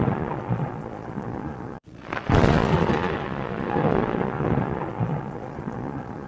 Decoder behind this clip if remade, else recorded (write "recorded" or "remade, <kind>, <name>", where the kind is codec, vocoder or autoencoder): remade, vocoder, Vocos